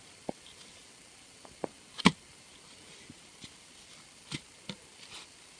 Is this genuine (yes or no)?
yes